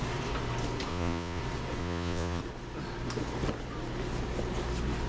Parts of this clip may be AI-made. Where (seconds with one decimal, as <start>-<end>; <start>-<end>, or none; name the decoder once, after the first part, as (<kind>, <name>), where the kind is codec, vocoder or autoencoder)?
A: 0.9-1.4 (vocoder, Vocos); 1.8-2.4